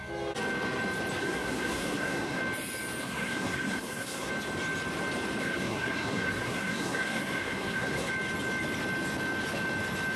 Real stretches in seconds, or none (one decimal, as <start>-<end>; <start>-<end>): 0.0-1.2; 2.4-3.0; 4.3-5.4; 8.1-10.2